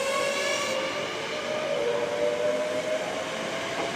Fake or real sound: real